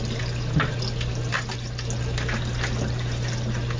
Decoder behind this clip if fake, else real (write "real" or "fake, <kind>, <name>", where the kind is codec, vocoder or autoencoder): real